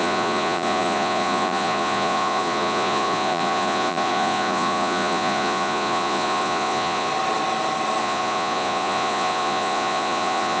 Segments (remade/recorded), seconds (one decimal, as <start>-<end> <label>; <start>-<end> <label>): 0.0-7.1 remade; 7.1-8.0 recorded; 8.0-10.6 remade